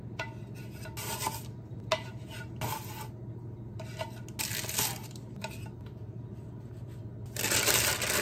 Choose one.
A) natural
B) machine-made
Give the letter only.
A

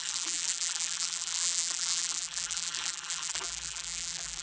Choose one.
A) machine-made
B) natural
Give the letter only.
A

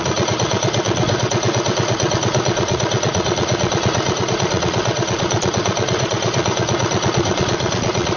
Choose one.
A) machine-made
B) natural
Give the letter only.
A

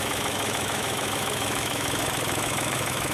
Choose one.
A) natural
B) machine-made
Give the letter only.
B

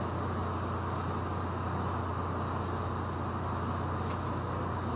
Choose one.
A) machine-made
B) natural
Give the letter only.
B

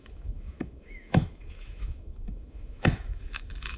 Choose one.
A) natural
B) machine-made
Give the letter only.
B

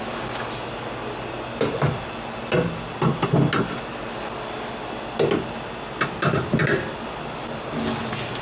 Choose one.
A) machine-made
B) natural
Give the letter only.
B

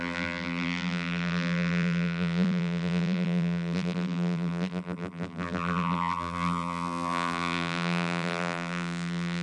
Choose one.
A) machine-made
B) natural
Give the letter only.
A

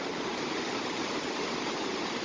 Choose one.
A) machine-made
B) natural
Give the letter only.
A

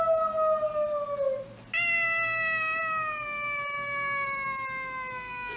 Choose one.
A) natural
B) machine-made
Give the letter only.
A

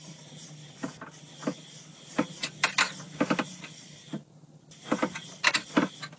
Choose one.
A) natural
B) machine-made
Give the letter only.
A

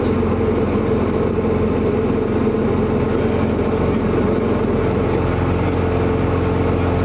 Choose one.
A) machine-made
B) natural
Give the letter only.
B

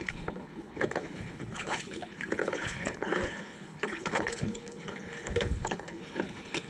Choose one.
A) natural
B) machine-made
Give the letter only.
B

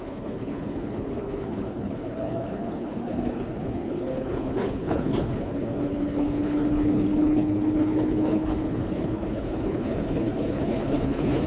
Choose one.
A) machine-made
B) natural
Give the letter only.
A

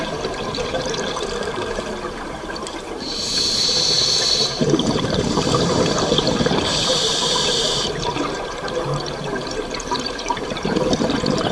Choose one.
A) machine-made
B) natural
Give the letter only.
A